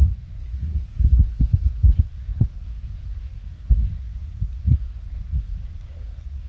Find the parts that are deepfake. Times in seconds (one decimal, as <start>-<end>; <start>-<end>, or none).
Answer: 0.0-6.5